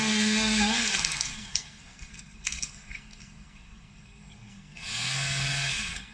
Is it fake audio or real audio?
fake